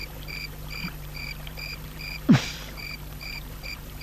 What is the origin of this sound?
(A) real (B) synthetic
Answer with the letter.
B